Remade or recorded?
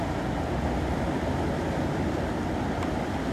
recorded